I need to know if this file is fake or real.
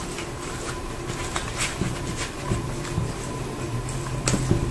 real